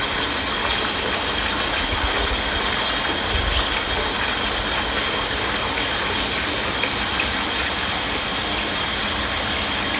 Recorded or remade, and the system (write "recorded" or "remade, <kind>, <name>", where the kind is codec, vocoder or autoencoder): recorded